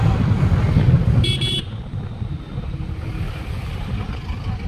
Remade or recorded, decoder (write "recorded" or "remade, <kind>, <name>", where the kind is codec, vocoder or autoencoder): recorded